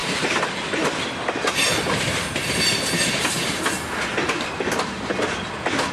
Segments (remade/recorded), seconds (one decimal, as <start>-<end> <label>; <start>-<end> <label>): 0.0-5.9 recorded